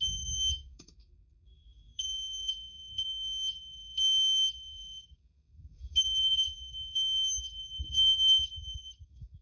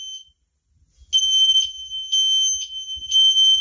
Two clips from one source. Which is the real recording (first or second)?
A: second